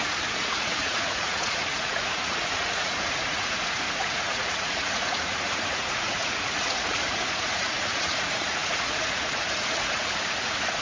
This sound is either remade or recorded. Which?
remade